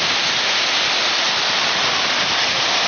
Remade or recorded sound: recorded